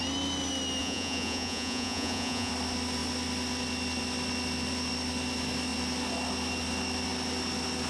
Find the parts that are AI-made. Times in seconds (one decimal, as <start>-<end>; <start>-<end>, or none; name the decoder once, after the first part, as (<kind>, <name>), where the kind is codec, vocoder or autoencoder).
0.8-2.5 (vocoder, Vocos)